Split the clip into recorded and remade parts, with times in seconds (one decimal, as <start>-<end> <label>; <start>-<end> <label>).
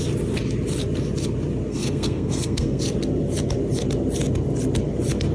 0.0-1.7 recorded; 1.7-2.8 remade; 2.8-5.3 recorded